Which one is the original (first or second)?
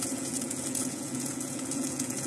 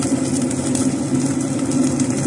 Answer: second